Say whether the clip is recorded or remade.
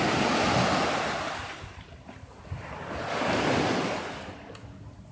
recorded